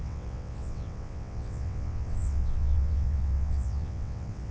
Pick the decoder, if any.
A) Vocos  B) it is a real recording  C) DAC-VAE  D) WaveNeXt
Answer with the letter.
D